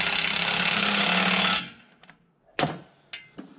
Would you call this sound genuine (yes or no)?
yes